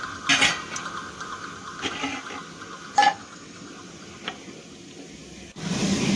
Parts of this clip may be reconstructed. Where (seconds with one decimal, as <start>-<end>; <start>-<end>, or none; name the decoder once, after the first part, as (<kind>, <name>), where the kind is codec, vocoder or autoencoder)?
3.1-3.7 (vocoder, WaveNeXt)